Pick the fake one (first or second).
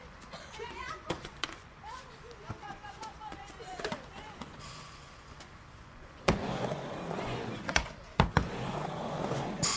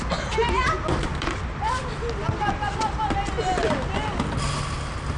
first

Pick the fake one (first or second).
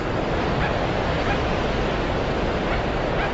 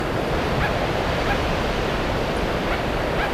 second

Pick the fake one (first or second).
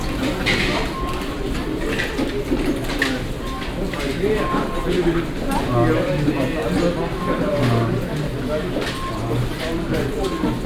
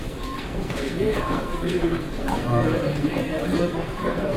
second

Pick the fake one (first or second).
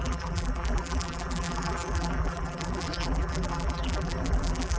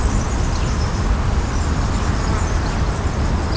first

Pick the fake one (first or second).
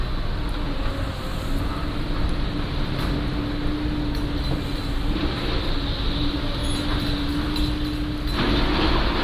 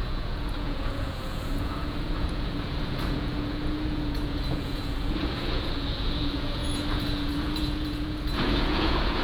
second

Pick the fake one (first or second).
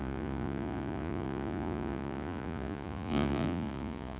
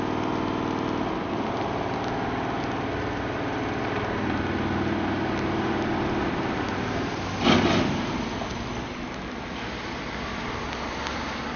first